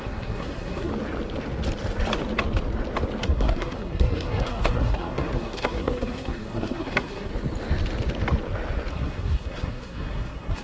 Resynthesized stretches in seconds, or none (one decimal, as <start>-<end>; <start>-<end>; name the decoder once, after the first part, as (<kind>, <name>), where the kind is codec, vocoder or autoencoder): 0.0-0.9 (codec, SNAC); 3.2-7.3; 8.9-10.6